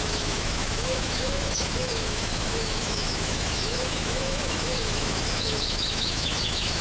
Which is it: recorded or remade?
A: remade